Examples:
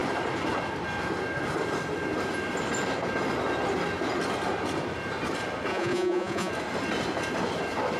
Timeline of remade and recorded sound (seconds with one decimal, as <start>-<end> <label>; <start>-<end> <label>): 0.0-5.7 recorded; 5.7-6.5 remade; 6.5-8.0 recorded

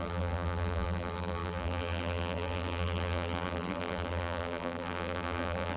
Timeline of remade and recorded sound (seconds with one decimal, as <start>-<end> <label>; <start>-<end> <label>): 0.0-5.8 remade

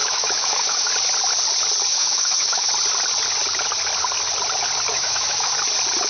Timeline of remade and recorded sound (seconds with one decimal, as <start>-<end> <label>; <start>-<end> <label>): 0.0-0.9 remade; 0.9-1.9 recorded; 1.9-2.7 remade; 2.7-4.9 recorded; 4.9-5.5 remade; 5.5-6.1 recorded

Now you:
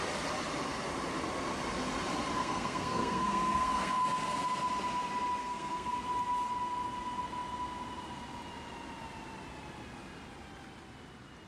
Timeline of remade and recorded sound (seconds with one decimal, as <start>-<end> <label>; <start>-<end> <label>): 0.0-2.4 recorded; 2.4-4.0 remade; 4.0-5.4 recorded; 5.4-6.0 remade; 6.0-11.5 recorded

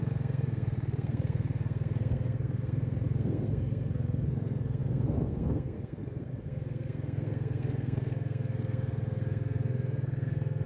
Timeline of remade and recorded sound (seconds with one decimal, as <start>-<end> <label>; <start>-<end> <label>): 0.0-10.7 remade

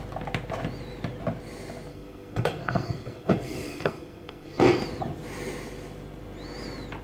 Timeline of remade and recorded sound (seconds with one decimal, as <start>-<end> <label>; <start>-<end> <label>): 0.0-1.9 recorded; 1.9-4.8 remade; 4.8-7.0 recorded

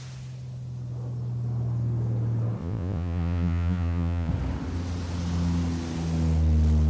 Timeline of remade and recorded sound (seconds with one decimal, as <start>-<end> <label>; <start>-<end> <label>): 0.0-2.6 recorded; 2.6-4.3 remade; 4.3-6.9 recorded